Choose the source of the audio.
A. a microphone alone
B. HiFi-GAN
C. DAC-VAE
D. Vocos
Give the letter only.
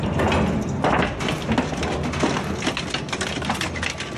A